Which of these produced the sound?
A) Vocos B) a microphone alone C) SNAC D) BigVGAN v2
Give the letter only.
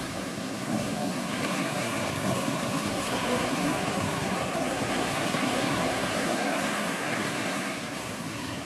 C